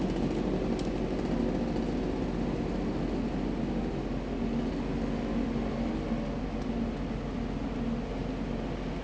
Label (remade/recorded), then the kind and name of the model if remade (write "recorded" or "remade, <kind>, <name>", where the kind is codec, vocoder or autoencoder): recorded